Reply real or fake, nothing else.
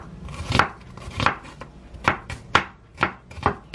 real